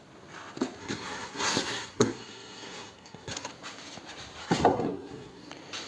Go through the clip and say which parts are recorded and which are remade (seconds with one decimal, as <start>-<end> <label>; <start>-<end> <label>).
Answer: 0.0-0.8 recorded; 0.8-3.5 remade; 3.5-4.4 recorded; 4.4-5.5 remade; 5.5-5.9 recorded